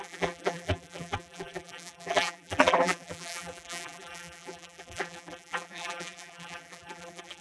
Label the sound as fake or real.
fake